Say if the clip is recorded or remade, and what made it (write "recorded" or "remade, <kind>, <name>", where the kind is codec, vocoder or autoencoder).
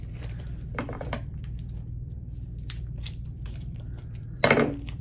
remade, vocoder, BigVGAN v2